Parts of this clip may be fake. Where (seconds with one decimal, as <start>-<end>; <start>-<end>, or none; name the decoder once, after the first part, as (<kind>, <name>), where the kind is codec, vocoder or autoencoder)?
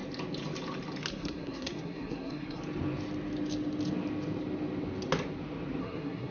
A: 1.1-2.6 (codec, SNAC); 5.8-6.3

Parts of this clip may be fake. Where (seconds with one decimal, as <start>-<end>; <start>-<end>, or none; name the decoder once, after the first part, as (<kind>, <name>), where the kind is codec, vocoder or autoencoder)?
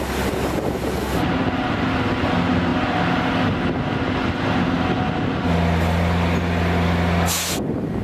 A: none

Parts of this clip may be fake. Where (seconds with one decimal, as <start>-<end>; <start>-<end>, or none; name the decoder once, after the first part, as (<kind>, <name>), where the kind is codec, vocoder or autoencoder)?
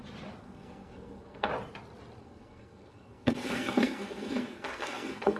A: 0.4-1.5 (codec, SNAC); 2.2-5.4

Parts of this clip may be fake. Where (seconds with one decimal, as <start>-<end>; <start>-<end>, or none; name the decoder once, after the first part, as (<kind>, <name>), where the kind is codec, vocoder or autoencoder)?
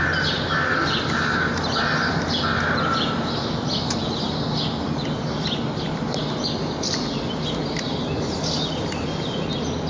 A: none